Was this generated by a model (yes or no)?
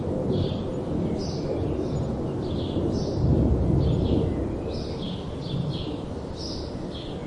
no